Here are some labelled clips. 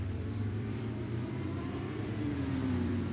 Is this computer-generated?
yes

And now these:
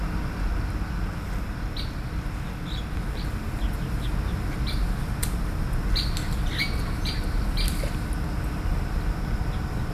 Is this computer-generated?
no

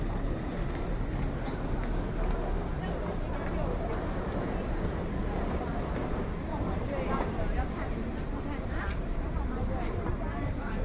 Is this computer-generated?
no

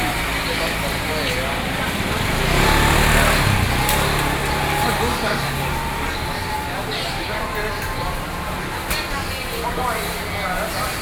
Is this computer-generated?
no